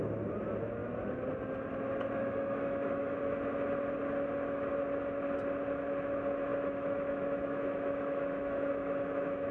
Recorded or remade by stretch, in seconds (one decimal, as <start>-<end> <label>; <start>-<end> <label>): 0.0-2.2 recorded; 2.2-3.2 remade; 3.2-6.5 recorded; 6.5-9.5 remade